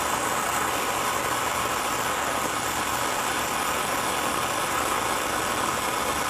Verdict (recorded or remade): recorded